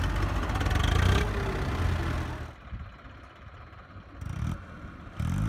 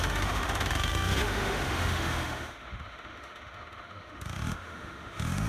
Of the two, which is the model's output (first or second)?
second